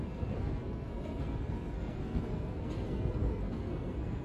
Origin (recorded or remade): remade